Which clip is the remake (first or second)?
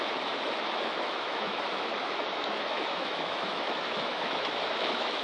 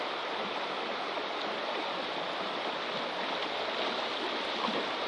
first